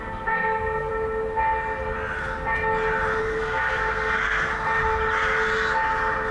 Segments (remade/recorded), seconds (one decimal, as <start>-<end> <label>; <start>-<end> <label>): 0.0-0.9 remade; 0.9-3.2 recorded; 3.2-4.5 remade; 4.5-6.3 recorded